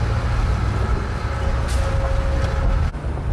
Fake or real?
real